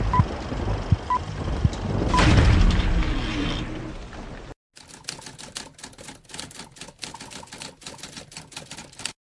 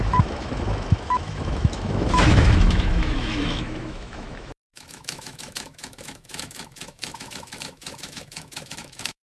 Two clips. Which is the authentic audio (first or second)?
first